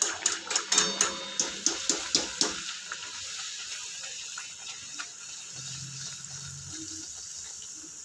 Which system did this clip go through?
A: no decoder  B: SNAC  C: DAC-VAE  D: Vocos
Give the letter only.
A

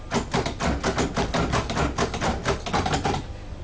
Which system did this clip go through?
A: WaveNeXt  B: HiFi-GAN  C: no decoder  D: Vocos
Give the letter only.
C